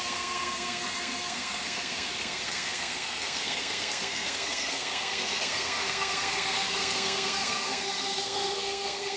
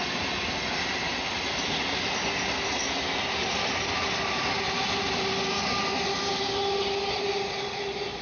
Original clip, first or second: second